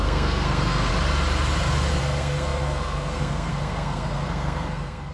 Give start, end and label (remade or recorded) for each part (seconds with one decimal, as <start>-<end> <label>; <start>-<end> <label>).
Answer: 0.0-0.9 remade; 0.9-2.0 recorded; 2.0-5.1 remade

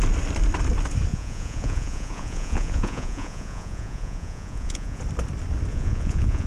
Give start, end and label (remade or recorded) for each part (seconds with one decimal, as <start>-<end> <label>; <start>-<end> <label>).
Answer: 0.0-1.1 recorded; 1.1-5.0 remade; 5.0-5.7 recorded; 5.7-6.5 remade

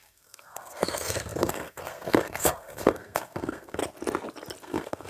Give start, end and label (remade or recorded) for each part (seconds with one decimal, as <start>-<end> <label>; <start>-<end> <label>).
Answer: 0.0-3.8 remade; 3.8-4.6 recorded; 4.6-5.1 remade

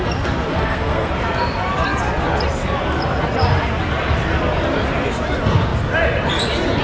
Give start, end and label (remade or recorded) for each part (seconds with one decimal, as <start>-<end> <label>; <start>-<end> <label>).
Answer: 0.0-0.5 recorded; 0.5-1.1 remade; 1.1-6.8 recorded

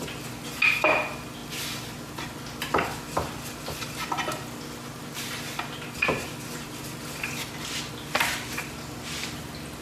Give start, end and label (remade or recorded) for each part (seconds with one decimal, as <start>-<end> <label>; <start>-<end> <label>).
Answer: 0.0-9.8 recorded

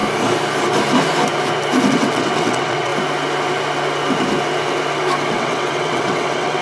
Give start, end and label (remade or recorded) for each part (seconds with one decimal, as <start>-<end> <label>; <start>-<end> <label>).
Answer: 0.0-1.9 recorded; 1.9-2.9 remade; 2.9-5.3 recorded; 5.3-6.6 remade

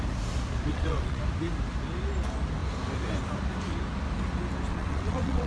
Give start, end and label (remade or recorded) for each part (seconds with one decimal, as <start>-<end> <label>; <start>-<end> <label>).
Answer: 0.0-0.7 recorded; 0.7-1.2 remade; 1.2-4.7 recorded; 4.7-5.5 remade

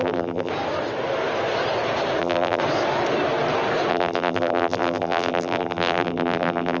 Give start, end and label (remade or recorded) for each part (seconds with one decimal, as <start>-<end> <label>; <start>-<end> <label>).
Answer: 0.0-0.5 remade; 0.5-2.2 recorded; 2.2-2.6 remade; 2.6-3.9 recorded; 3.9-6.8 remade